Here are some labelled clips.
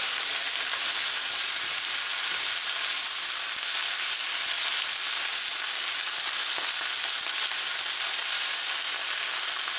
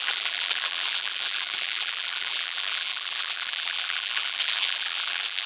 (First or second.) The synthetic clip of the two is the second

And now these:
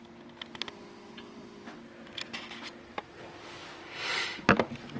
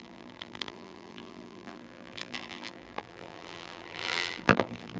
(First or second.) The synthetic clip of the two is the second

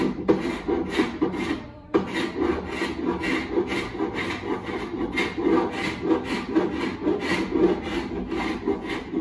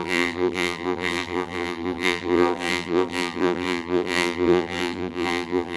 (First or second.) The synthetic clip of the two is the second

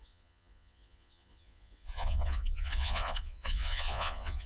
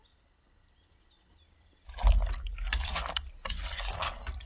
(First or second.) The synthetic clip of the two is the first